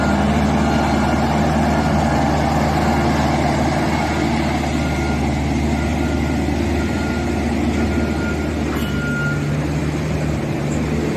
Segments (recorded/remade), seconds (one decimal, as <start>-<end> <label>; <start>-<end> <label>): 0.0-9.8 recorded; 9.8-10.6 remade; 10.6-11.2 recorded